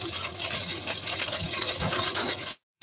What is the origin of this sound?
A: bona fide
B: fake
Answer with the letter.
B